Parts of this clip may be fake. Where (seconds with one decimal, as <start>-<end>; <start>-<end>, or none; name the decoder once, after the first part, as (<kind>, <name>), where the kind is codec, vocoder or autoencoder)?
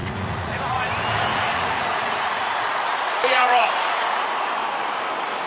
0.0-0.8 (vocoder, Vocos); 1.3-4.5